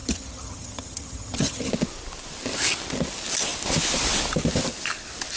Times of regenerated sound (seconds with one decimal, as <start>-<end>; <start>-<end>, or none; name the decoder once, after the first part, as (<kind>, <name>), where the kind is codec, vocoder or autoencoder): 0.0-1.7 (vocoder, HiFi-GAN)